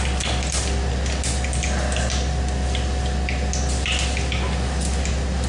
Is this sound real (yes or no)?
yes